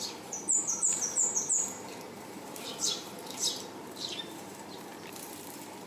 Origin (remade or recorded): remade